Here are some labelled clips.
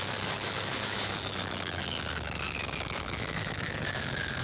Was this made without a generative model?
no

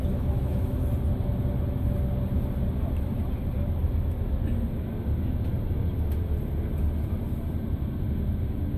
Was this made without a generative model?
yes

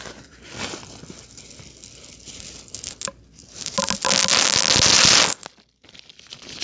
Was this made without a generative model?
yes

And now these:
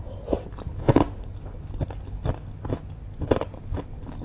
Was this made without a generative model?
yes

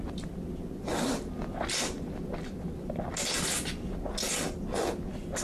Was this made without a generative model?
yes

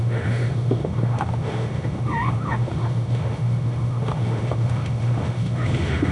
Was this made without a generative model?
no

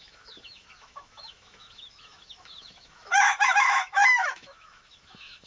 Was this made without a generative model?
no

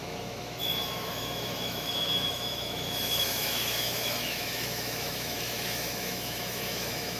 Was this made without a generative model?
no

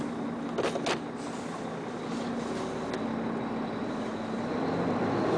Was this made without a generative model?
yes